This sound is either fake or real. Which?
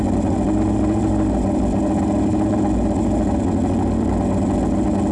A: real